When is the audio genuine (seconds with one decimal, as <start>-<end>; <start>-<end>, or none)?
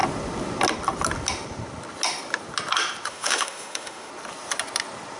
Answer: 0.0-3.1; 4.1-5.2